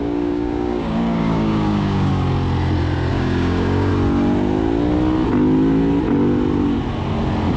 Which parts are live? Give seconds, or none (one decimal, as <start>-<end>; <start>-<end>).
2.1-3.1; 3.9-7.6